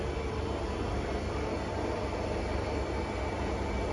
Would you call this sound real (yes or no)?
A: yes